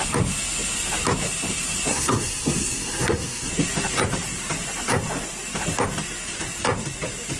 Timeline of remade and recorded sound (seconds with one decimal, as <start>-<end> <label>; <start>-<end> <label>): 0.0-1.9 recorded; 1.9-3.5 remade; 3.5-7.4 recorded